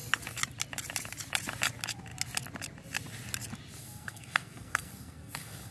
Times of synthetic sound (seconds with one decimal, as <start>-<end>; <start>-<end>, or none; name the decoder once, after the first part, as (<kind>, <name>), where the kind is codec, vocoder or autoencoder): 3.8-5.7 (codec, SNAC)